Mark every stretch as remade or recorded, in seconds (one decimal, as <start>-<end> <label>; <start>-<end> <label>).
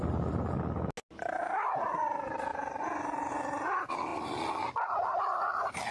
0.0-5.9 recorded